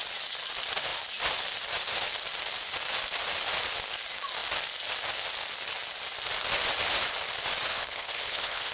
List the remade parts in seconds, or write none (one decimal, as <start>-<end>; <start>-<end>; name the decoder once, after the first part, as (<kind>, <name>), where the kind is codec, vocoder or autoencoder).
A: 7.7-8.7 (codec, HILCodec)